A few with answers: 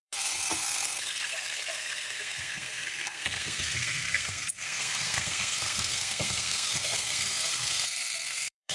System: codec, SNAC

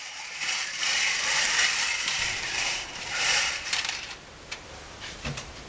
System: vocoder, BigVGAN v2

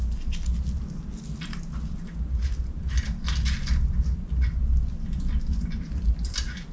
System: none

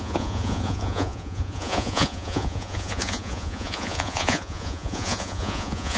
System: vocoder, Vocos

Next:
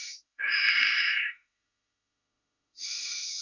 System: autoencoder, DAC-VAE